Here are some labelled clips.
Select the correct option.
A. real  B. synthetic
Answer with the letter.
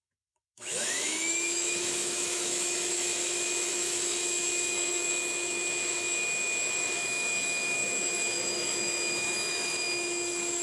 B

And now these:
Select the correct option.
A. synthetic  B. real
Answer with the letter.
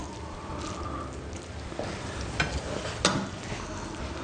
B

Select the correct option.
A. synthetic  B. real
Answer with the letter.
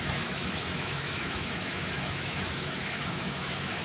A